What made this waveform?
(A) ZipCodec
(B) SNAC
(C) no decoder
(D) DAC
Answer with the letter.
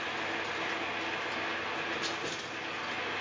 C